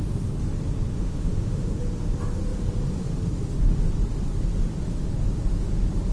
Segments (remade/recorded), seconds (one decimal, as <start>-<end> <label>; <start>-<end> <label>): 0.0-0.9 recorded; 0.9-1.8 remade; 1.8-6.1 recorded